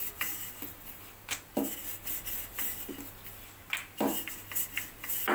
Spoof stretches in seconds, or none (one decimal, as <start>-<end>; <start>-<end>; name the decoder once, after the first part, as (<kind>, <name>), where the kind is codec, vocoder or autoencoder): none

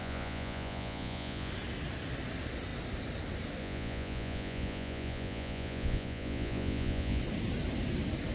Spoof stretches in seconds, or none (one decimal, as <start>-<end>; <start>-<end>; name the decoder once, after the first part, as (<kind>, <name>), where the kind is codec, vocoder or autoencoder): 0.0-1.5 (vocoder, Vocos); 3.6-7.2